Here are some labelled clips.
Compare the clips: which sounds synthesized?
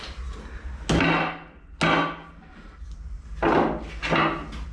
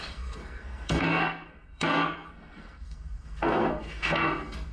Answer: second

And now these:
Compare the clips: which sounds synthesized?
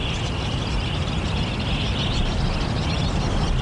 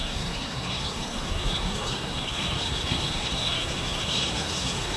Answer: second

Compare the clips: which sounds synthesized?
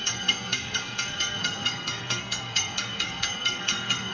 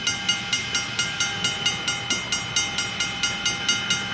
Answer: first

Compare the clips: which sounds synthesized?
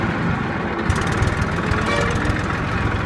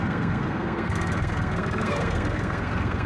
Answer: second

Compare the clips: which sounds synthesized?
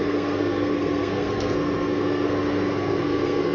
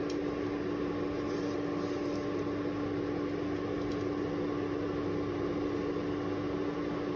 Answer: first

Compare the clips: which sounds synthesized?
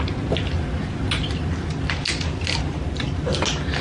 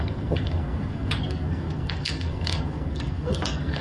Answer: second